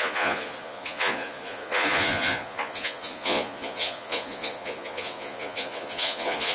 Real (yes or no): no